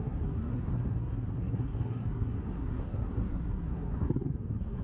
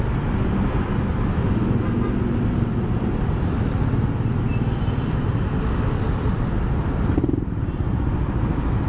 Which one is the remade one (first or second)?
first